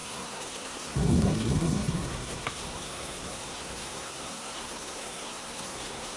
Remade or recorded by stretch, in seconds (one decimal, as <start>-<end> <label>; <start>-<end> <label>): 0.0-6.2 remade